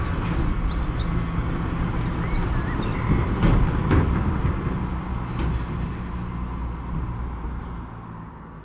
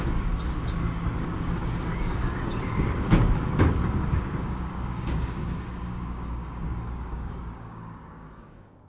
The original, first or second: first